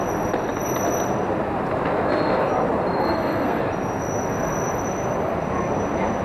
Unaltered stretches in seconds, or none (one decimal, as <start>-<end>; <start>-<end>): 0.0-3.0; 3.6-6.2